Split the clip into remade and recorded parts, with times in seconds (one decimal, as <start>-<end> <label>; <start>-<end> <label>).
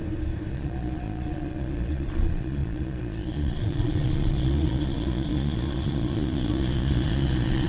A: 0.0-0.5 recorded; 0.5-7.7 remade